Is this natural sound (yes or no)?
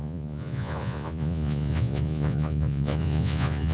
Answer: no